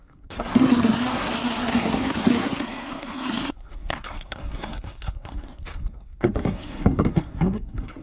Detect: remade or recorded remade